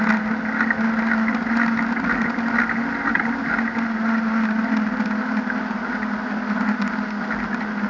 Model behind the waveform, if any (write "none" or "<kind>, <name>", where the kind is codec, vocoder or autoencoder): none